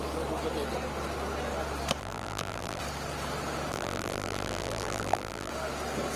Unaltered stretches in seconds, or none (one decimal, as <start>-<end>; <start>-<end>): 0.0-2.0; 2.8-3.7; 5.5-6.2